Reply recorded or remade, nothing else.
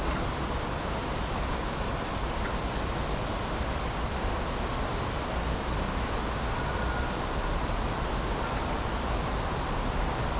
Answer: recorded